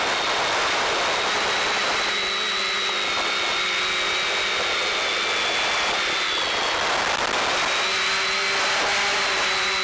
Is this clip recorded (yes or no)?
yes